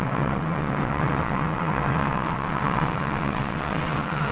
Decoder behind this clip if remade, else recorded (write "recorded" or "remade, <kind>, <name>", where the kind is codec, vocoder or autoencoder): remade, vocoder, WaveNeXt